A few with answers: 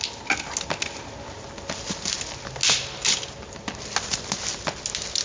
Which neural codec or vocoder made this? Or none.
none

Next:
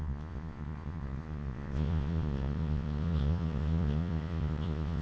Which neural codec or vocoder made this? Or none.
vocoder, Vocos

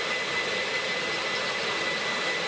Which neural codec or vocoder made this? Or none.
none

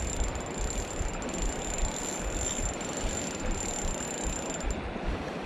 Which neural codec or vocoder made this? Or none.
none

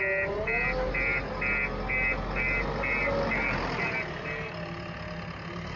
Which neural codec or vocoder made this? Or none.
none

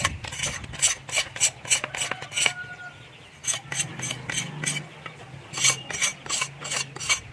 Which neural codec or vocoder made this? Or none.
none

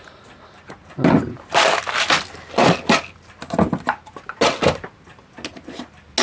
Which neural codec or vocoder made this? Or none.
none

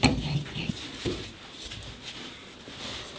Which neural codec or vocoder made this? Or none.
none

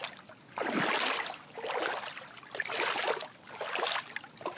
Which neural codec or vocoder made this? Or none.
none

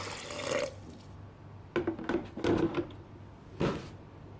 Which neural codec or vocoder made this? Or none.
none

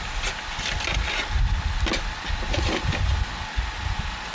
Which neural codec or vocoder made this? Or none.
none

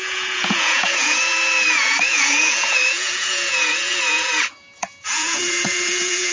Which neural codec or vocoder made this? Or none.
vocoder, Vocos